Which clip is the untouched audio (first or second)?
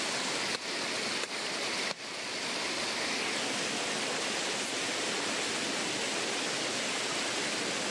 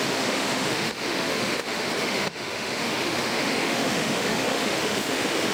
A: first